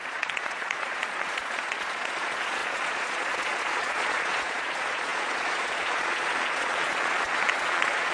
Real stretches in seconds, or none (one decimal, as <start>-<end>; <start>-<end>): none